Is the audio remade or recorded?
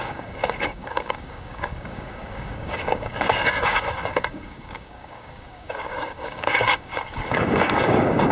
remade